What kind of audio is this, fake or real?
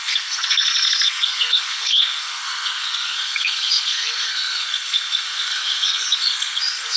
fake